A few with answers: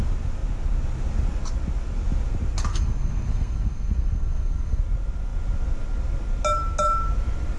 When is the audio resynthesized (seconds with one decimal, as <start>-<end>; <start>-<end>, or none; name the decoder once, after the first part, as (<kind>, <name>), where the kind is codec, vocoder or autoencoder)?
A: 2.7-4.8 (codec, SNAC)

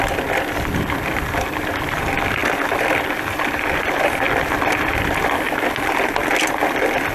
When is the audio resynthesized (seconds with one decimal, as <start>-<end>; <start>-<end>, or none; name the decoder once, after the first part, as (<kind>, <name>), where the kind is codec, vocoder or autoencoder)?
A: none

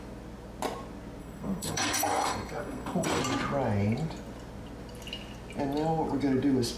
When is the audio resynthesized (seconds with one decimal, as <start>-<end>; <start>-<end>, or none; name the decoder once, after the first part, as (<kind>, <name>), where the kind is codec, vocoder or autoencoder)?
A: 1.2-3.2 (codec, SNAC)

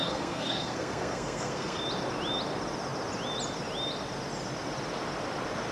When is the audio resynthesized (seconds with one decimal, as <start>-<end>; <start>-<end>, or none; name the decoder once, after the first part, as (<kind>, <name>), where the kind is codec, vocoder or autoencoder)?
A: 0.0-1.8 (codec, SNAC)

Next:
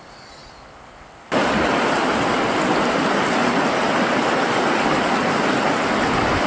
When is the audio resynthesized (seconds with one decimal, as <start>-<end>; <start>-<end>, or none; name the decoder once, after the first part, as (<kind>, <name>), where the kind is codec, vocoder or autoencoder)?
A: none